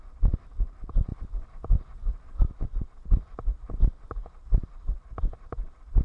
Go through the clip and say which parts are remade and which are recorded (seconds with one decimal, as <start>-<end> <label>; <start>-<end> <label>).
0.0-6.0 recorded